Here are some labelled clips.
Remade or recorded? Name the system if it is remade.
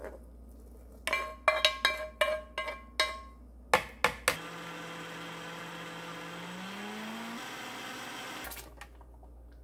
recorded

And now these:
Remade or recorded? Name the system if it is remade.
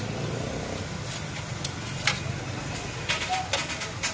recorded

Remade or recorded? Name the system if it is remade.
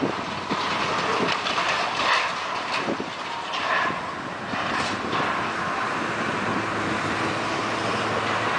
recorded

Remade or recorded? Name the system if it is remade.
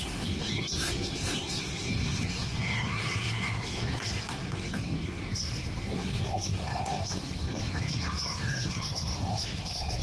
remade, codec, SNAC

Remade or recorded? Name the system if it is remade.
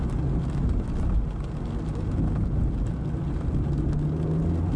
recorded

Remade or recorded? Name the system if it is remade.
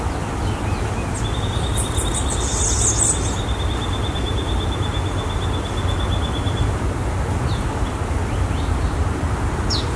recorded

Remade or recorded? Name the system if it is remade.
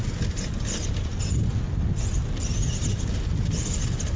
recorded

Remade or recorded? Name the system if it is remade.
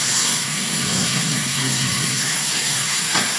remade, codec, SNAC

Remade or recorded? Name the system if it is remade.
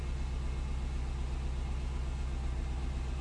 recorded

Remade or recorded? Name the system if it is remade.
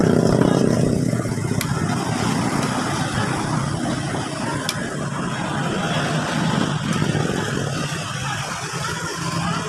recorded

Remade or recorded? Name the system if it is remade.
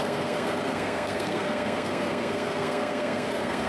remade, codec, SNAC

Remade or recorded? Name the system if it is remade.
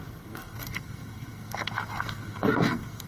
remade, codec, SNAC